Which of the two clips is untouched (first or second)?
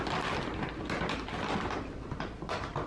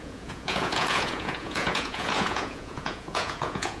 first